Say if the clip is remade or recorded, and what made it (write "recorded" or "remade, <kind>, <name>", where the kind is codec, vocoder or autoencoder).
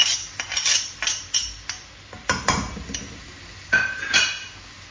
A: recorded